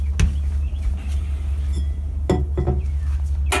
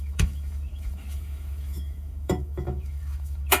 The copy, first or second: second